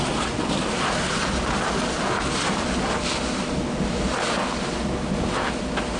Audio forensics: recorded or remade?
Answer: recorded